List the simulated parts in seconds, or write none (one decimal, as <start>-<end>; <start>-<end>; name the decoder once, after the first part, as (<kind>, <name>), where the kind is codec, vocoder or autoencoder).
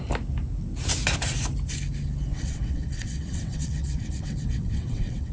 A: 2.3-5.3 (vocoder, WaveNeXt)